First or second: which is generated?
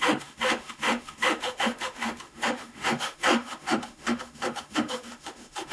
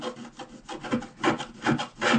first